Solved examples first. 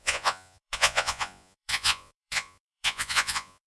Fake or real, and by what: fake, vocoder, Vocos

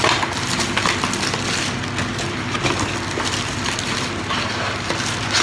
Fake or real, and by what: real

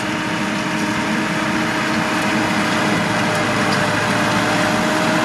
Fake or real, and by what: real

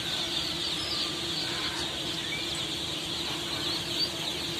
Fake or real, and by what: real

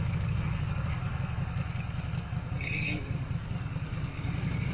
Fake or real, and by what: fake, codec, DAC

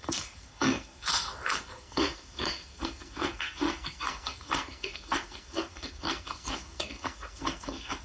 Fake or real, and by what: fake, codec, SNAC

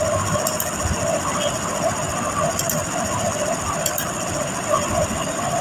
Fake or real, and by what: real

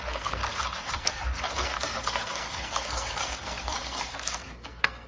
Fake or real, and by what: fake, codec, SNAC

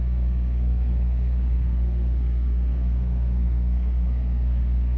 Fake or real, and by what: fake, codec, SNAC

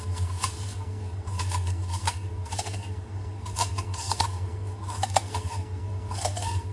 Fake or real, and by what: fake, codec, SNAC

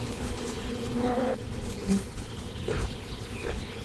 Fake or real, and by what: fake, codec, HILCodec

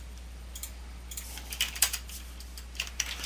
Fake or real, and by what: fake, vocoder, BigVGAN v2